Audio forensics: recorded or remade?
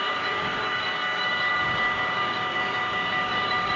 remade